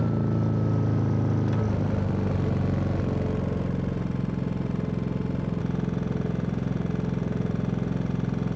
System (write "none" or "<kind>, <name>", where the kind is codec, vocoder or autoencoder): none